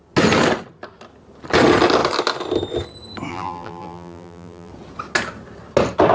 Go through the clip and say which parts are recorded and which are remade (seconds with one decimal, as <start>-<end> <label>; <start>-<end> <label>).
0.0-3.3 recorded; 3.3-4.7 remade; 4.7-6.1 recorded